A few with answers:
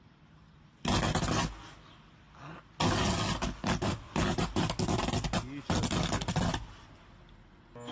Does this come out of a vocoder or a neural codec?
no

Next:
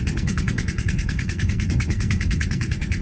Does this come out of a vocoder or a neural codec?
yes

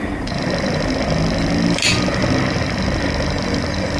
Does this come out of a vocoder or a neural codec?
no